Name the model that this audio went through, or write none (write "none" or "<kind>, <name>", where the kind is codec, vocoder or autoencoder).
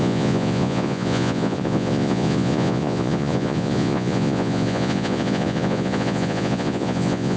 vocoder, Vocos